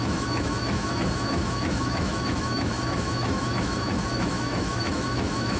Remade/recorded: remade